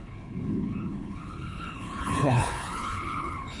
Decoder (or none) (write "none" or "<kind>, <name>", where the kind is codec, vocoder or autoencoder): codec, HILCodec